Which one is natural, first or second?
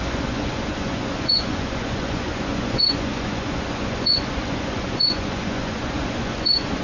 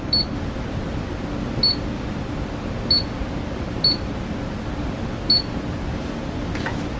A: second